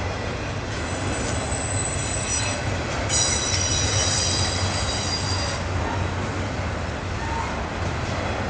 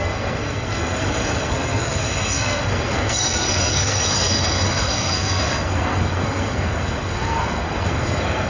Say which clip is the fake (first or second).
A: second